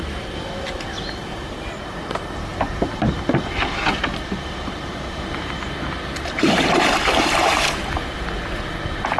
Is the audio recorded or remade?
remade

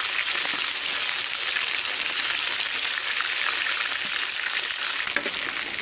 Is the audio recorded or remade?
recorded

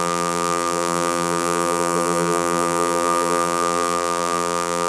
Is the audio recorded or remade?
remade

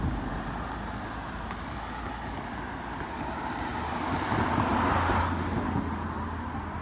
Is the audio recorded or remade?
recorded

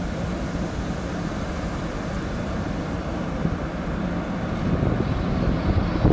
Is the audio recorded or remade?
remade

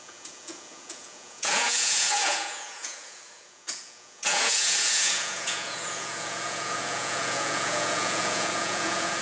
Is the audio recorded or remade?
remade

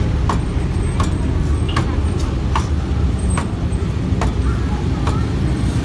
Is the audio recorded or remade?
recorded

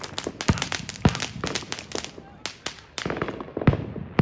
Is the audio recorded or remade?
recorded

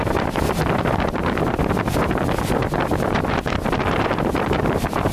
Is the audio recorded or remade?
remade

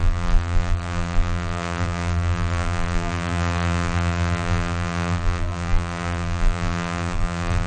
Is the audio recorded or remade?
remade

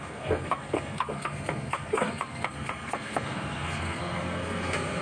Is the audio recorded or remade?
remade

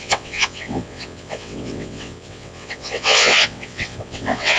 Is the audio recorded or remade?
remade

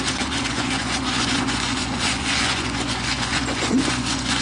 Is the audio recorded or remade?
remade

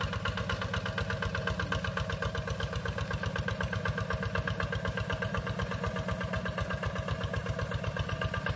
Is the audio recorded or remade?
recorded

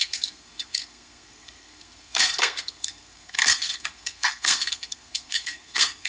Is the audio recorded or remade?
remade